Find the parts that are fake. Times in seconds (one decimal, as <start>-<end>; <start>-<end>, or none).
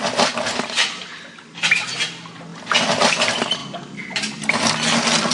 none